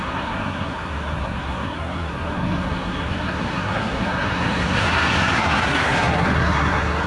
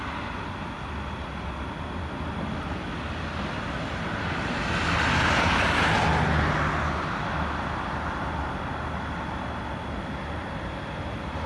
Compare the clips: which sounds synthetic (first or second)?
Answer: first